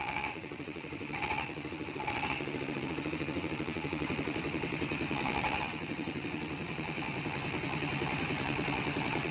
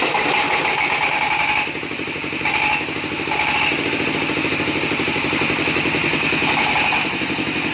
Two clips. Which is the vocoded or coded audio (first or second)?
first